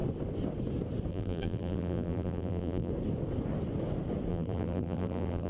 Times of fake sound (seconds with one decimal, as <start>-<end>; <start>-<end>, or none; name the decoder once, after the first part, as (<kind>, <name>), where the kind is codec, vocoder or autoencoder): 1.1-2.9 (vocoder, BigVGAN v2); 4.3-5.5